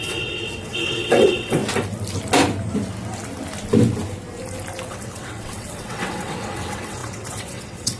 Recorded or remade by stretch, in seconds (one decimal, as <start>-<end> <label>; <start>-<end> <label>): 0.0-1.6 remade; 1.6-4.9 recorded; 4.9-8.0 remade